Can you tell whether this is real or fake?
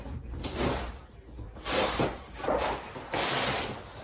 real